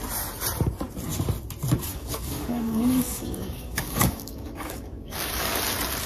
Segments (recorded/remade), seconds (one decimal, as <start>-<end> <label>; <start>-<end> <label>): 0.0-1.9 recorded; 1.9-5.6 remade; 5.6-6.1 recorded